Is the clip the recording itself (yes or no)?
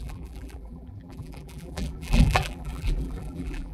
no